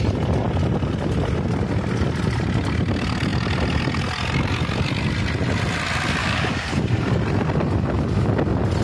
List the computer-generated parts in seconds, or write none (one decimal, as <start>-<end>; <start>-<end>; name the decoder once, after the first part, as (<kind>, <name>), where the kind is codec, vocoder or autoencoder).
6.2-6.8 (codec, DAC)